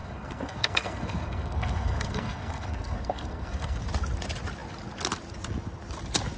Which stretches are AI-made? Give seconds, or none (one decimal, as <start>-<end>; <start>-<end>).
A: 0.0-3.8